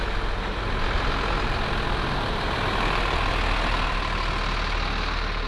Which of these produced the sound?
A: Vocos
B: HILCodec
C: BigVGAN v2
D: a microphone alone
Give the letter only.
D